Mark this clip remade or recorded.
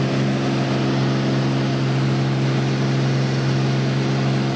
recorded